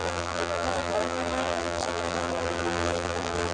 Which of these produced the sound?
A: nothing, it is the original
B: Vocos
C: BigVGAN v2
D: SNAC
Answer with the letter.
C